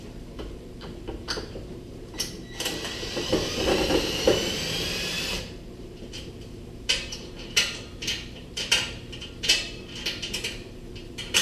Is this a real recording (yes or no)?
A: no